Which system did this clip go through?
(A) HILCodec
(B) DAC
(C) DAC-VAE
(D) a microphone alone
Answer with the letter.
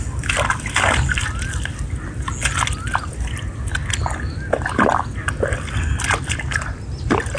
D